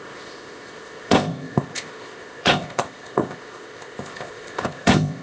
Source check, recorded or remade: remade